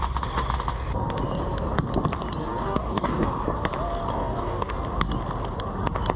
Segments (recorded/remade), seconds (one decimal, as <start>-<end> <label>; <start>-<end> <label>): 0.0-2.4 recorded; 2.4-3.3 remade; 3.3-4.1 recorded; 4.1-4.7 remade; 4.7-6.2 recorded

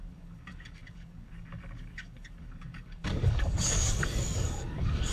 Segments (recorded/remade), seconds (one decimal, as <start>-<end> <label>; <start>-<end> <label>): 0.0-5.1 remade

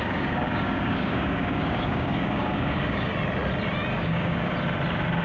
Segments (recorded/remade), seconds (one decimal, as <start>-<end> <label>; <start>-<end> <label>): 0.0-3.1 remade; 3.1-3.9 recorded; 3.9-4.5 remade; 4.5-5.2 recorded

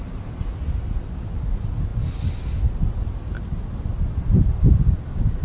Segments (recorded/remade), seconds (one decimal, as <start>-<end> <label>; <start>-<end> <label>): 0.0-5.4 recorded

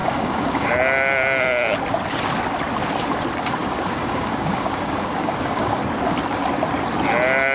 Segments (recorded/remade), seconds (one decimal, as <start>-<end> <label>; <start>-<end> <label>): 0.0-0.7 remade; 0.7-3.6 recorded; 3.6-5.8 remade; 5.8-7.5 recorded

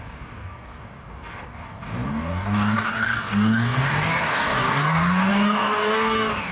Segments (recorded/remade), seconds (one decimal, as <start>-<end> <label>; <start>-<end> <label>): 0.0-6.5 remade